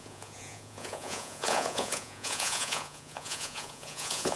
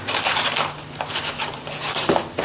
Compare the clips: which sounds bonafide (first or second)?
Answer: second